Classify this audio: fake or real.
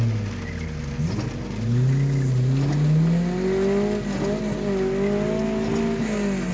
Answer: real